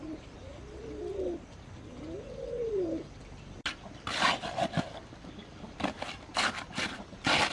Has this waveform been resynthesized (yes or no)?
no